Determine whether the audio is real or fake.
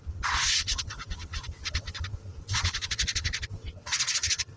fake